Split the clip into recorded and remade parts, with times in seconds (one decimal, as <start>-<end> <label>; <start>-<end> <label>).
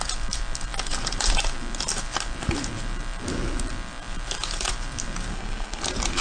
0.0-5.3 recorded; 5.3-5.8 remade; 5.8-6.2 recorded